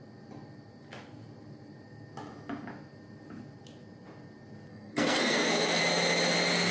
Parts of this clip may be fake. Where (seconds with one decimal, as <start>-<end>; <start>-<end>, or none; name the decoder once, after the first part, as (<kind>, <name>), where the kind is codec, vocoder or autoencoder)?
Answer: 4.7-5.8 (codec, SNAC)